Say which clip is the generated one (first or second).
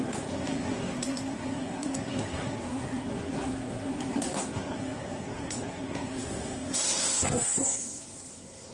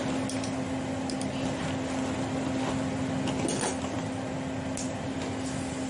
first